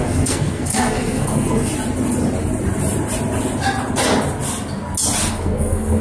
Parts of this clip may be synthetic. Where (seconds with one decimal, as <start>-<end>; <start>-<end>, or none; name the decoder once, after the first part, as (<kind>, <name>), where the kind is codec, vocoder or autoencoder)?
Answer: 0.0-1.7 (codec, SNAC); 5.3-6.0

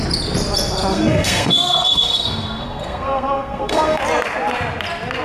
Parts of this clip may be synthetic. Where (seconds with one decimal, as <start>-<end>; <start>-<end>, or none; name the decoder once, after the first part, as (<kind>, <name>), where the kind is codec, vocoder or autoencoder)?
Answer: 0.9-4.0 (codec, SNAC)